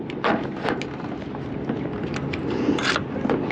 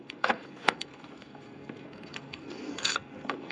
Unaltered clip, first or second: first